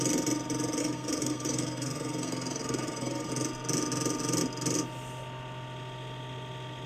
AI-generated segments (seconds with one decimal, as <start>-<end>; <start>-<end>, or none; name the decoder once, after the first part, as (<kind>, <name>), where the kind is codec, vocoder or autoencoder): 0.8-3.3 (codec, SNAC)